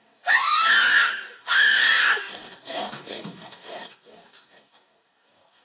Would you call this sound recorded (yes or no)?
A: no